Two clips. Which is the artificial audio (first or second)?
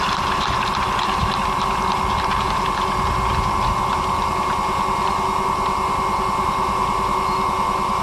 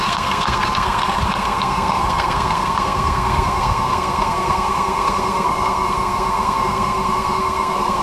second